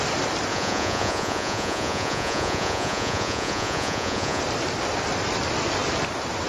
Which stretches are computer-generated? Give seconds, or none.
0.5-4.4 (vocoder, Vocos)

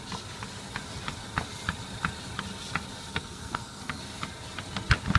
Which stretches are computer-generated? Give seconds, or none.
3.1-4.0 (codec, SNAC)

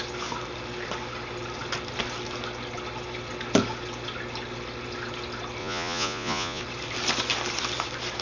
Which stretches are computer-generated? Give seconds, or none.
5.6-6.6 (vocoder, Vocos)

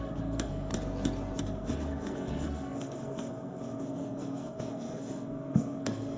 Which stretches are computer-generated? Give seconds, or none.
0.0-0.7 (codec, SNAC); 1.4-6.2